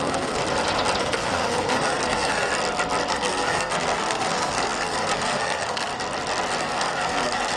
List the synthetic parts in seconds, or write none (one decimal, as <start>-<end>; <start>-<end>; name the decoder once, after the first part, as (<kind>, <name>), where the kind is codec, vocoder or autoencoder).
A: 0.0-0.4 (codec, SNAC); 1.0-2.5; 3.1-5.9; 6.6-7.6